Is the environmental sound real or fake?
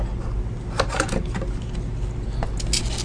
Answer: real